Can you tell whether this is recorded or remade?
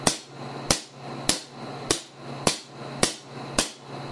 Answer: recorded